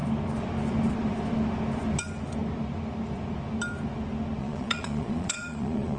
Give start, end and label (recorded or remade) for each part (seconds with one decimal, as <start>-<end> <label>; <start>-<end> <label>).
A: 0.0-4.4 recorded; 4.4-6.0 remade